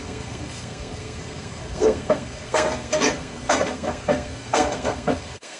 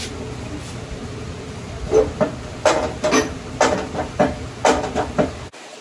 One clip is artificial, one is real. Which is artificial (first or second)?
first